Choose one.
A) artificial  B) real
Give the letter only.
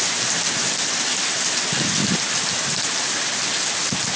B